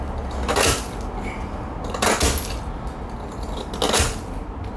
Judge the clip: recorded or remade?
recorded